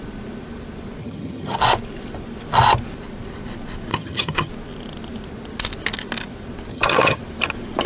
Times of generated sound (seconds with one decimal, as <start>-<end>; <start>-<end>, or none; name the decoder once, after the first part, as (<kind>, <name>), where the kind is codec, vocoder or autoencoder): 1.0-1.6 (vocoder, HiFi-GAN); 3.9-4.5; 6.7-7.2